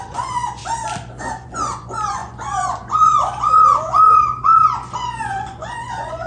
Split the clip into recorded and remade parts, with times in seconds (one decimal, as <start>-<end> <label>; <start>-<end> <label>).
0.0-0.6 remade; 0.6-1.2 recorded; 1.2-6.3 remade